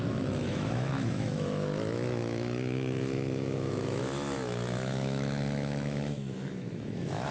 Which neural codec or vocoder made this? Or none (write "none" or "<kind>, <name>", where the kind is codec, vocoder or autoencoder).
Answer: autoencoder, DAC-VAE